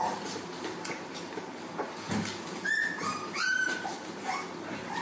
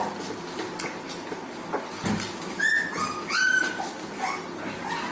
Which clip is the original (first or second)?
second